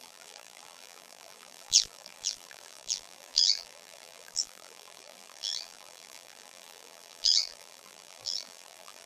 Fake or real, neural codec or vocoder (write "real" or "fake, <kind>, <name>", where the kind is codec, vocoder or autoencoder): fake, vocoder, BigVGAN v2